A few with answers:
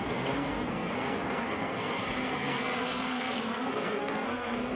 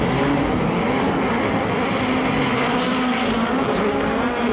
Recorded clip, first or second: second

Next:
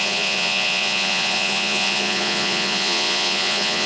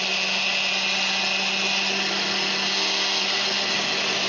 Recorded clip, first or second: second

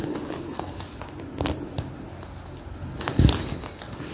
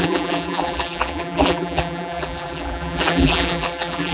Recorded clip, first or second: first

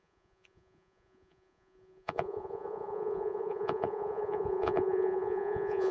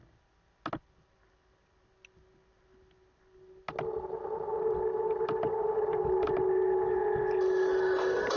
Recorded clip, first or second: second